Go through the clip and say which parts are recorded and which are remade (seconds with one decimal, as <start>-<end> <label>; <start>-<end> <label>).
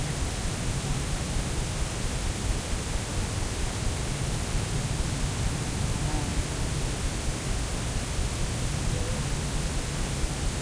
0.0-10.6 recorded